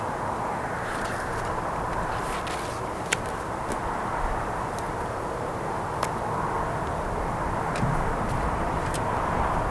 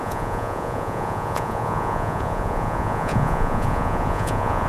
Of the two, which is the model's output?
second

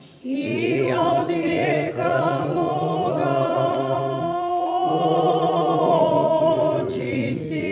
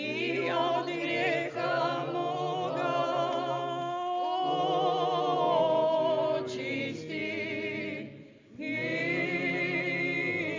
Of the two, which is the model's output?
first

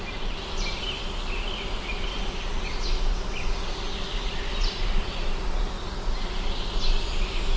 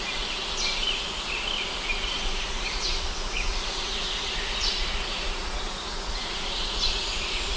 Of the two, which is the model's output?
second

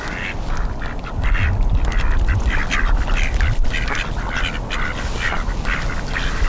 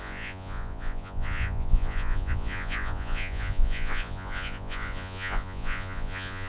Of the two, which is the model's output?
second